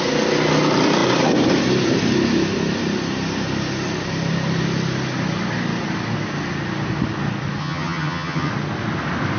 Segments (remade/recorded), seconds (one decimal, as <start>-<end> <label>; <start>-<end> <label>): 0.0-7.6 recorded; 7.6-8.5 remade; 8.5-9.4 recorded